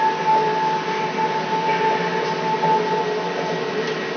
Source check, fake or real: real